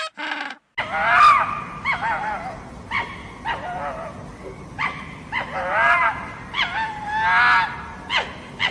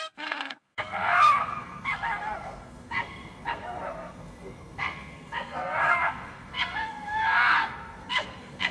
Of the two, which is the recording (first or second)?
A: first